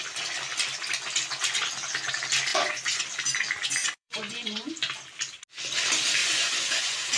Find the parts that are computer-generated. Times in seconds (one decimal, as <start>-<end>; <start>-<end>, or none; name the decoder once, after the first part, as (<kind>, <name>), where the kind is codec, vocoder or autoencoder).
2.5-3.0 (vocoder, Vocos); 3.8-4.7; 6.2-7.2